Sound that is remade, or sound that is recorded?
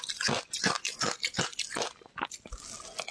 recorded